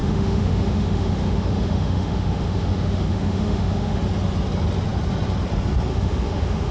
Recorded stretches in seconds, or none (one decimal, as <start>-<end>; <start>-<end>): 4.0-5.9